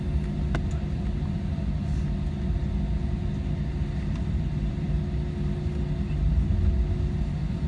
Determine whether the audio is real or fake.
real